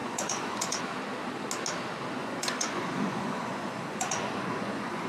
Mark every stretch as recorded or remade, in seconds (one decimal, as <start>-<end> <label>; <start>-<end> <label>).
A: 0.0-0.8 remade; 0.8-2.2 recorded; 2.2-5.1 remade